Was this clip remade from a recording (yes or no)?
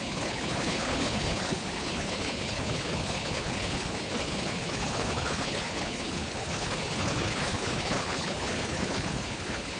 yes